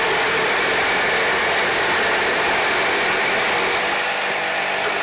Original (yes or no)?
yes